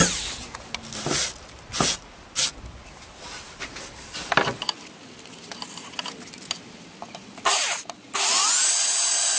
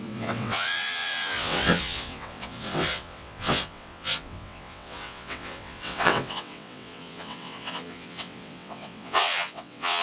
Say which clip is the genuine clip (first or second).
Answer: first